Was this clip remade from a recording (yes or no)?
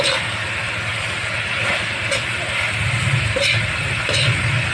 no